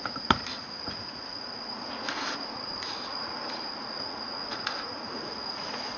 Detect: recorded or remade remade